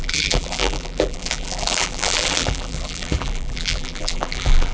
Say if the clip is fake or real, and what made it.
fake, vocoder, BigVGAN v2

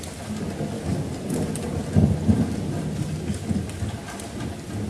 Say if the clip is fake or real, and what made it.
real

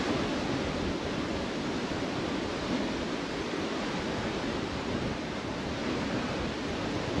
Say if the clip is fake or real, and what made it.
fake, vocoder, BigVGAN v2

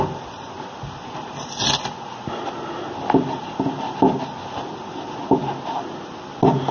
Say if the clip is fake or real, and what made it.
real